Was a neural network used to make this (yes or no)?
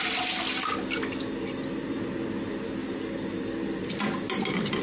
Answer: no